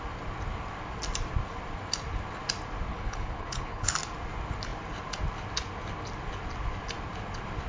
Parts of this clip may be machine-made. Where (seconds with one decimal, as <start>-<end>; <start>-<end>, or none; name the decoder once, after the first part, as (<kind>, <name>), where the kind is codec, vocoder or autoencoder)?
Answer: 2.9-3.9 (codec, HILCodec)